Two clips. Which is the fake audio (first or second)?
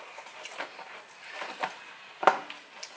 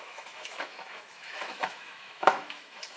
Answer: second